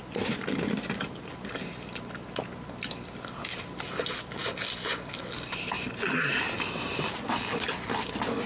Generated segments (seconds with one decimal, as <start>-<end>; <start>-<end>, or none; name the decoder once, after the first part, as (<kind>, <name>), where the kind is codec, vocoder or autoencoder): none